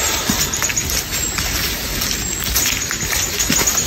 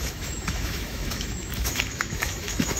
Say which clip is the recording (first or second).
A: first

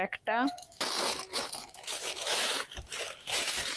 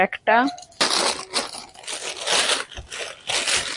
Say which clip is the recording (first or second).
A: second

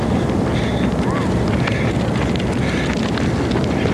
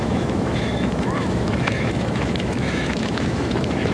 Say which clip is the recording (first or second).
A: first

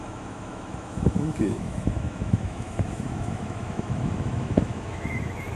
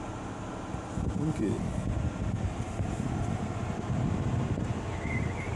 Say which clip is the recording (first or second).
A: second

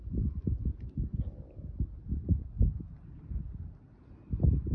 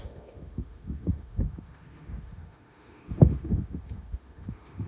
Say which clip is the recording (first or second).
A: first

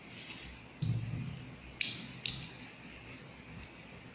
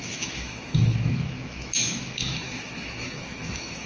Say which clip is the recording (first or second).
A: first